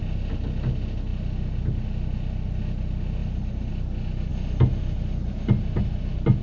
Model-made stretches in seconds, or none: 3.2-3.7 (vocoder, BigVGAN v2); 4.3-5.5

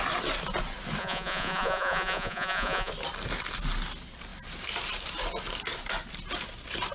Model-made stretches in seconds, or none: 1.0-2.9 (vocoder, Vocos)

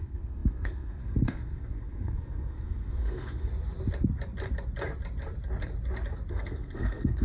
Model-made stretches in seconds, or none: 0.0-3.5 (codec, SNAC); 6.3-7.2

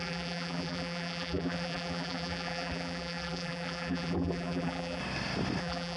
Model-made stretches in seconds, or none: 0.0-5.0 (vocoder, BigVGAN v2); 5.6-6.0

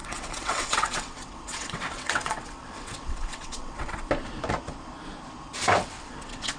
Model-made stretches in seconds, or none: 0.0-4.0 (vocoder, WaveNeXt); 5.8-6.6

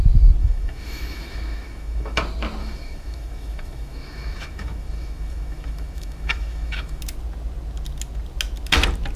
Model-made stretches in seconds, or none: 0.4-2.2 (autoencoder, DAC-VAE); 2.6-7.0

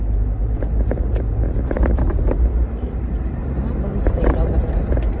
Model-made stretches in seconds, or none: 0.4-2.1 (vocoder, BigVGAN v2); 2.5-3.4; 3.9-4.5

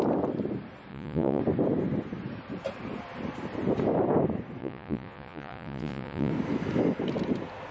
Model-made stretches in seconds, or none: 0.9-1.4 (vocoder, Vocos); 4.6-6.3